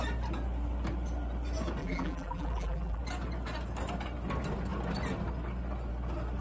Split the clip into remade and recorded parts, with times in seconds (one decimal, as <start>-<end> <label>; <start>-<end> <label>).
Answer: 0.0-1.8 recorded; 1.8-3.0 remade; 3.0-6.4 recorded